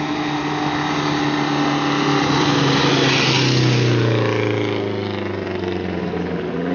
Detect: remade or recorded recorded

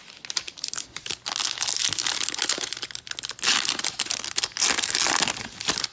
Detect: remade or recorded recorded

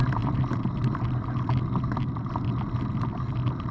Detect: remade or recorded recorded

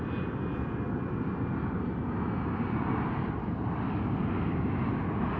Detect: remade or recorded recorded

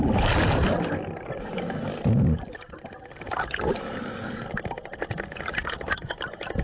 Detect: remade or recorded recorded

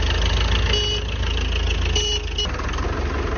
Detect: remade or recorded recorded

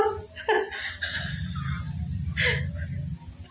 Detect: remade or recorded recorded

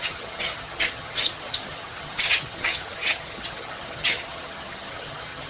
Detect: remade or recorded remade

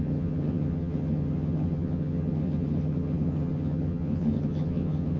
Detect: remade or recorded remade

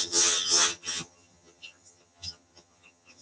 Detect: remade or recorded remade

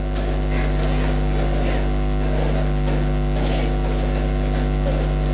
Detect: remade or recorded recorded